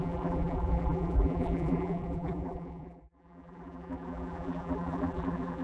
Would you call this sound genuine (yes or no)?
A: no